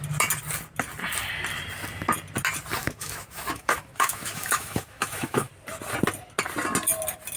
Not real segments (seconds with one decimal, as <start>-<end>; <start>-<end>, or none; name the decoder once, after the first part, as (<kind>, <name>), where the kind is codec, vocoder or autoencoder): 2.8-5.5 (autoencoder, DAC-VAE)